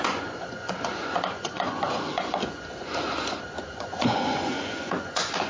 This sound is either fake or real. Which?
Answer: fake